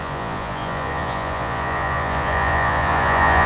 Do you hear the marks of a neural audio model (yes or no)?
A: yes